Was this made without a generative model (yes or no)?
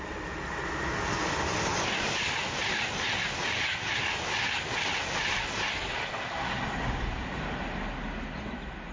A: yes